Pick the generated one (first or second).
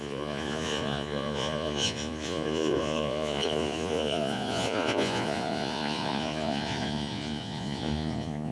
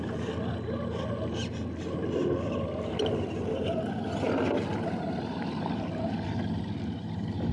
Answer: first